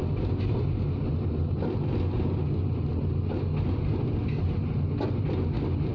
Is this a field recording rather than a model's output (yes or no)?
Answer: yes